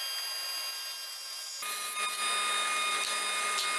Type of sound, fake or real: real